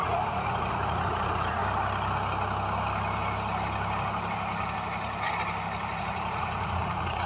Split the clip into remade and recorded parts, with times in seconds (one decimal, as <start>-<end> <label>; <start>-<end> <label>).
0.0-1.6 remade; 1.6-6.0 recorded; 6.0-7.3 remade